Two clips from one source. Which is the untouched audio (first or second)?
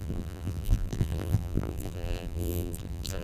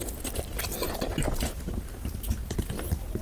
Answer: second